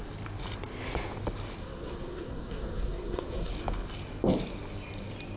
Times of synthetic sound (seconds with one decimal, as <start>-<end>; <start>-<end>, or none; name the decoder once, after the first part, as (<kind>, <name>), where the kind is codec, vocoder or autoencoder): 1.6-3.5 (codec, SNAC)